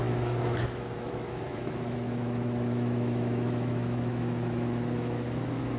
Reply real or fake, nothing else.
fake